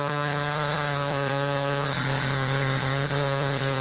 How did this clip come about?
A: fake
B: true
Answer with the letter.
A